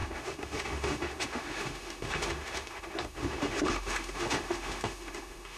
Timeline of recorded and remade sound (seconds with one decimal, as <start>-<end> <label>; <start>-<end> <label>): 0.0-5.6 remade

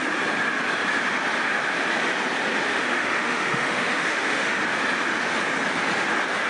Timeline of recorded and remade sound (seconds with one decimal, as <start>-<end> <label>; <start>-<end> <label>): 0.0-2.7 recorded; 2.7-4.6 remade; 4.6-6.5 recorded

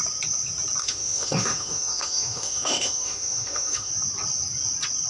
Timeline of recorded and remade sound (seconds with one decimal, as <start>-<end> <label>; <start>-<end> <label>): 0.0-0.8 recorded; 0.8-3.9 remade; 3.9-5.1 recorded

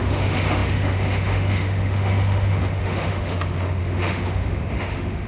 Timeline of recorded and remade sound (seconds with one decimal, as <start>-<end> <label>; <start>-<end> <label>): 0.0-5.3 remade

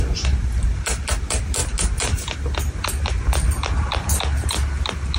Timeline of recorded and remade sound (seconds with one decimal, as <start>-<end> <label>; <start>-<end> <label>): 0.0-5.2 recorded

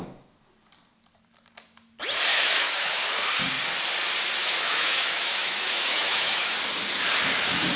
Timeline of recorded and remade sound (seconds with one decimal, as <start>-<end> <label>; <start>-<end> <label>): 0.0-2.3 recorded; 2.3-2.9 remade; 2.9-4.4 recorded; 4.4-6.5 remade; 6.5-7.8 recorded

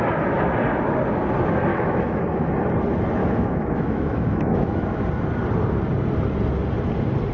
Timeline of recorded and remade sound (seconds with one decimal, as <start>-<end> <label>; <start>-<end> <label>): 0.0-1.7 recorded; 1.7-2.5 remade; 2.5-3.2 recorded; 3.2-5.0 remade; 5.0-7.3 recorded

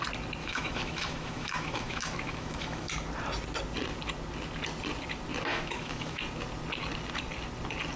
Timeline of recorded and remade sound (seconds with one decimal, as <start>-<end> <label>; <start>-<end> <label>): 0.0-0.4 recorded; 0.4-2.9 remade; 2.9-5.5 recorded; 5.5-6.2 remade; 6.2-8.0 recorded